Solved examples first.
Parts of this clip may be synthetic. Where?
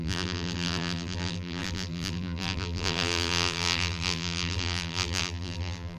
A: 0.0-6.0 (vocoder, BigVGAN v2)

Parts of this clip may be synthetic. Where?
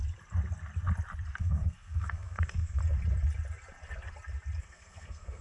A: 1.4-2.8 (codec, SNAC); 4.6-5.4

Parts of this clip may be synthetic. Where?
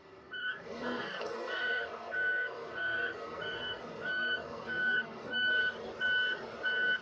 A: 0.0-5.6 (codec, SNAC)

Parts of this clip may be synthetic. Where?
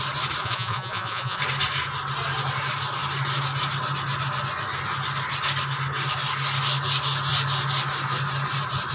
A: 0.4-1.4 (vocoder, Vocos)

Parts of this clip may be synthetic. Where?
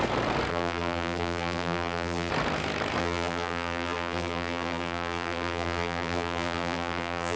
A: 0.5-2.3 (vocoder, BigVGAN v2); 3.0-7.4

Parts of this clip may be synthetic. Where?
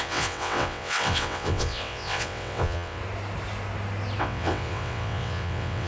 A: 0.0-3.0 (vocoder, WaveNeXt); 4.2-5.9